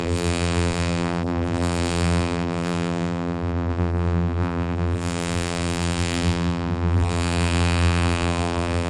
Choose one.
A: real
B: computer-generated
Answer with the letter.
B